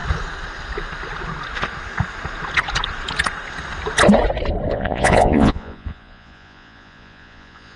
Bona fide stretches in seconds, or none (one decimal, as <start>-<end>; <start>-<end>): 0.0-4.7